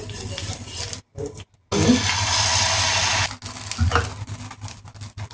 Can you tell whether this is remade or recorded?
recorded